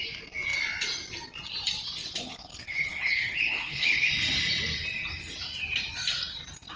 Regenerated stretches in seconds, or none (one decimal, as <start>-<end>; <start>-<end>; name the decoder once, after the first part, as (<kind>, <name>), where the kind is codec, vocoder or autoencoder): 2.0-4.1 (codec, HILCodec)